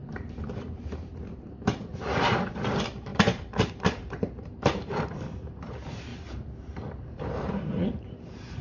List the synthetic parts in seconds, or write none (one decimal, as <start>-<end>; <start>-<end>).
0.0-8.6

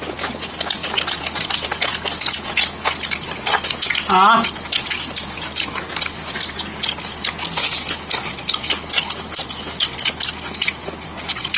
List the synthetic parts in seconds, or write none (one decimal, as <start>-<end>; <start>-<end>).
none

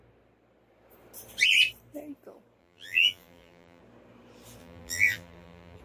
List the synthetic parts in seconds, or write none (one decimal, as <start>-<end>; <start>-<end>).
2.6-3.8; 4.6-5.8

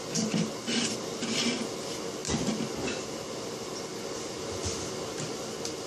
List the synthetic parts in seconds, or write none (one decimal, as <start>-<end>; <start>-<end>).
none

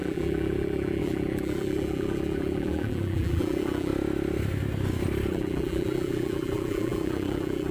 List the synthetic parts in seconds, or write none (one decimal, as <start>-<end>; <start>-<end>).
0.0-3.9; 5.3-7.7

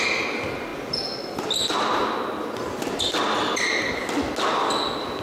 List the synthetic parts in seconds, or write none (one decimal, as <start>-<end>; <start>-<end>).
none

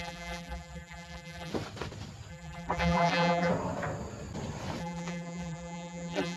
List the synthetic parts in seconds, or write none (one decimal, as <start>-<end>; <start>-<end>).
0.0-1.5; 2.3-3.5; 4.8-6.4